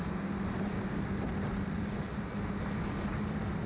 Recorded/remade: recorded